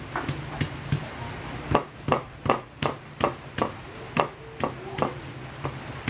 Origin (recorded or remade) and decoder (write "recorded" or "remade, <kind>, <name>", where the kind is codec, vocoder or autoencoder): recorded